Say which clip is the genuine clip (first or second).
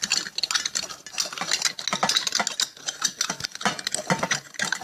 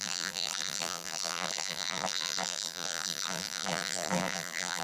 first